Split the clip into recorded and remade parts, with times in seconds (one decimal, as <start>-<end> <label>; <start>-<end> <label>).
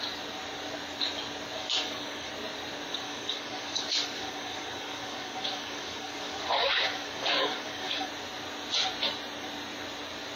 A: 0.0-1.6 recorded; 1.6-2.3 remade; 2.3-2.9 recorded; 2.9-8.1 remade; 8.1-10.4 recorded